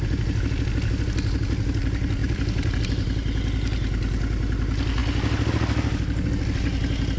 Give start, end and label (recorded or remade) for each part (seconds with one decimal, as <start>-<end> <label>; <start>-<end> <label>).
0.0-2.2 recorded; 2.2-2.8 remade; 2.8-7.2 recorded